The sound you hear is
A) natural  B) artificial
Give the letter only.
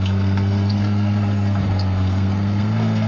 B